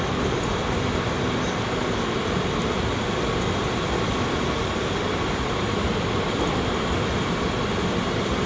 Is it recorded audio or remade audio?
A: recorded